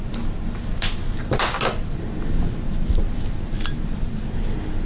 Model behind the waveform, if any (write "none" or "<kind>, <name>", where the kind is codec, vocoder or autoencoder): none